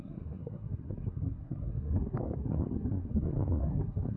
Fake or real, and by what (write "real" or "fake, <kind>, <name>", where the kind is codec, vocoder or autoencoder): fake, codec, SNAC